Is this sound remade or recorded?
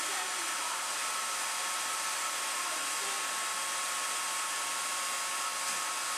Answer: recorded